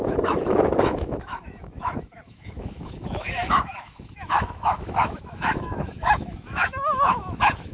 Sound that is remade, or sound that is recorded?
remade